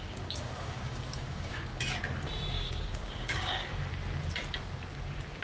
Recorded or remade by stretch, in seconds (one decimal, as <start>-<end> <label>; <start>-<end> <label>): 0.0-1.7 remade; 1.7-2.5 recorded; 2.5-3.9 remade; 3.9-5.4 recorded

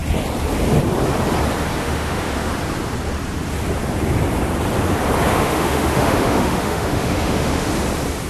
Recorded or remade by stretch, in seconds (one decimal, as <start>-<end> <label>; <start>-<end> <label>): 0.0-1.8 recorded; 1.8-2.5 remade; 2.5-5.3 recorded; 5.3-7.7 remade; 7.7-8.3 recorded